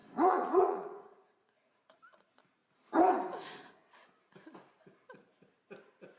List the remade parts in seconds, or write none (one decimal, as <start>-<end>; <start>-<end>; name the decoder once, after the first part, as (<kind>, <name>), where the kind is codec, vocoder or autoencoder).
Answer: 0.0-2.0 (vocoder, Vocos)